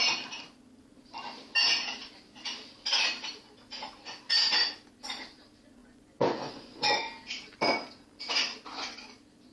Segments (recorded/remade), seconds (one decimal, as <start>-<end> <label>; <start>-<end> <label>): 0.0-5.8 recorded; 5.8-7.1 remade; 7.1-9.5 recorded